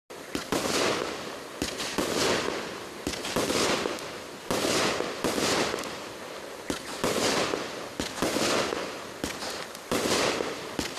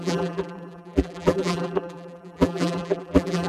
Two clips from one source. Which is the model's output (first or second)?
second